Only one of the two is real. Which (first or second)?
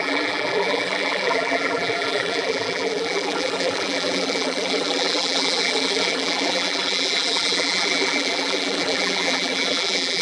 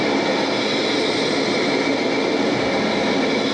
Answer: second